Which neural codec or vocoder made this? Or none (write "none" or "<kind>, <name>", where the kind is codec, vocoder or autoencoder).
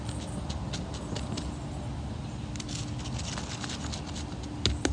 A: none